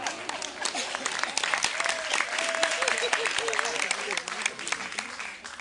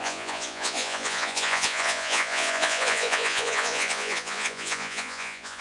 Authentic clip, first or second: first